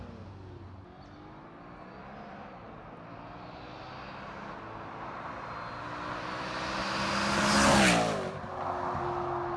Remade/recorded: recorded